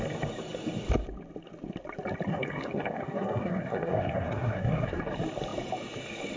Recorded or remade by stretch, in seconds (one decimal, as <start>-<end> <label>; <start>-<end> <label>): 0.0-2.3 recorded; 2.3-5.0 remade; 5.0-6.4 recorded